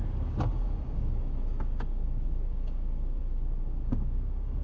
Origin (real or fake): fake